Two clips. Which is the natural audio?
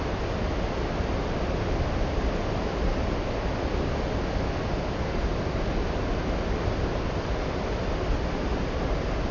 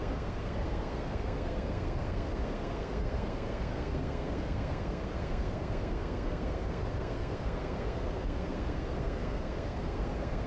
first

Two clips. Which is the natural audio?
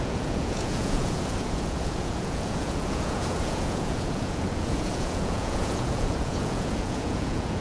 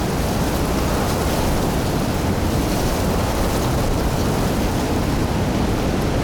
second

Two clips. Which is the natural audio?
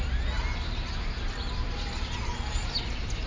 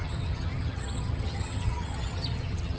first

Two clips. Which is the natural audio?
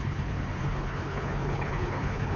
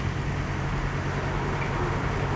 second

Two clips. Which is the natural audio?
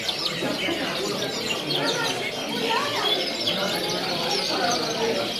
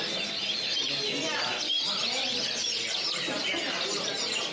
second